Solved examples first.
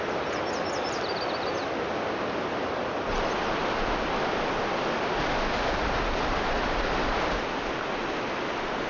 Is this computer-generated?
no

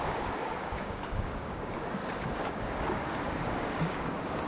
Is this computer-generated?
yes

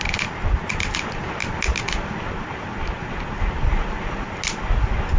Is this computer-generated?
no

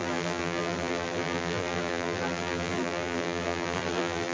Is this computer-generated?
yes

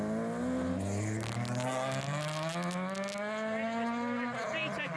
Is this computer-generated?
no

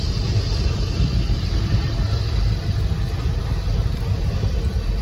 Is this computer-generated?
no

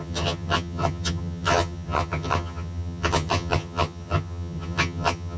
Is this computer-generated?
yes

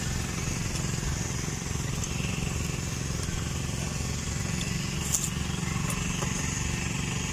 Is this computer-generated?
no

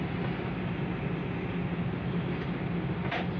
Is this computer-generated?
no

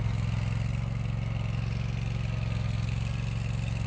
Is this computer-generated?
no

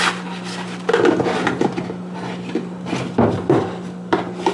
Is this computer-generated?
no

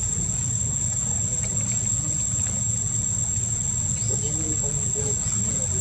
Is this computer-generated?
no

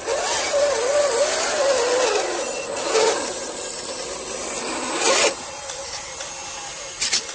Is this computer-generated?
no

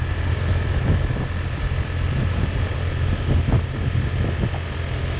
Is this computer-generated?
no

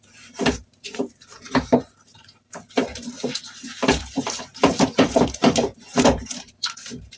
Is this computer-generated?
yes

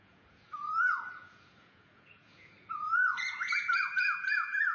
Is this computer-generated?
yes